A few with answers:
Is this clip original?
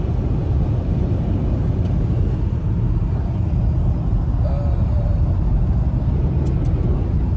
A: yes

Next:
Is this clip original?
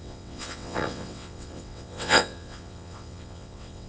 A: no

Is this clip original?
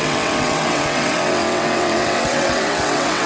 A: no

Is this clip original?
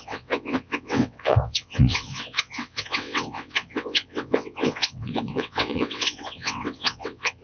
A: no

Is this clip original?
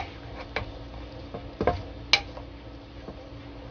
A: yes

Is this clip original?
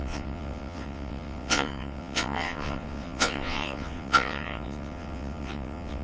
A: no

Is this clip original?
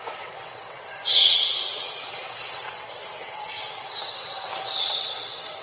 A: no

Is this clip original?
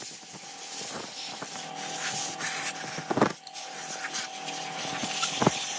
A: yes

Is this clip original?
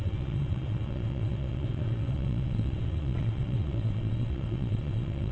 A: no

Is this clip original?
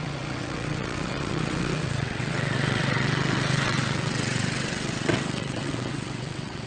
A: no